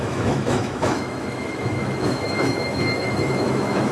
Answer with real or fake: fake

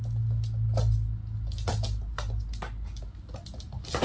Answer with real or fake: real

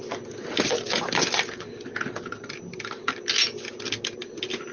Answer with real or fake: real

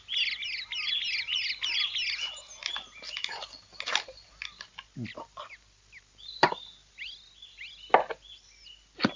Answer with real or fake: real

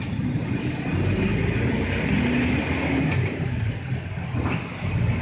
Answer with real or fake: real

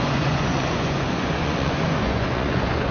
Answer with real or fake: fake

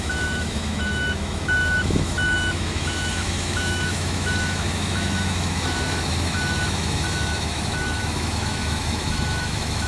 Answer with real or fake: fake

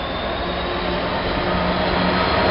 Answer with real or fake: real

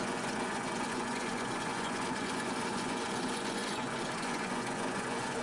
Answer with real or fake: fake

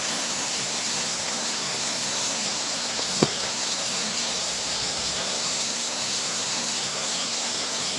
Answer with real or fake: fake